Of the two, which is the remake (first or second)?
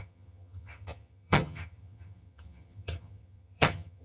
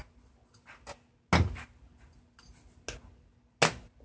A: first